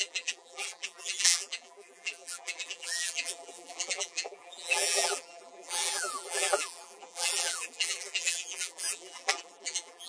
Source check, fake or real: fake